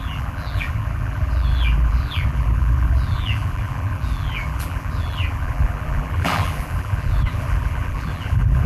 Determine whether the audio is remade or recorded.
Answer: remade